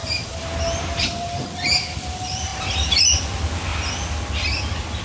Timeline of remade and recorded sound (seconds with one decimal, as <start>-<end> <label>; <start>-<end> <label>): 0.0-5.0 recorded